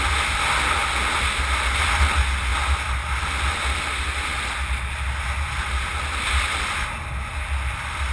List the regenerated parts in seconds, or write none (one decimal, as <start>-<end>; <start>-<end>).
none